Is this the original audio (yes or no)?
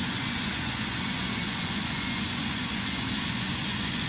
no